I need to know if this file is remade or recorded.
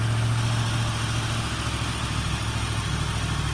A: recorded